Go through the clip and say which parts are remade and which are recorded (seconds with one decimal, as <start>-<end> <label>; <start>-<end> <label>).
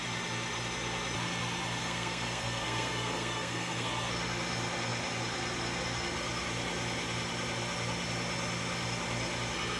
0.0-1.8 recorded; 1.8-3.9 remade; 3.9-9.8 recorded